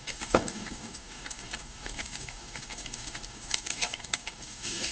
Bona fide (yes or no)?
no